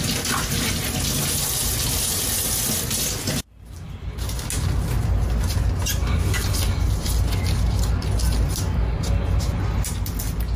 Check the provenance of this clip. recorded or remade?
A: recorded